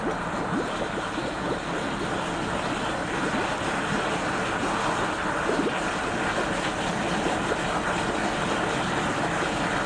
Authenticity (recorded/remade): recorded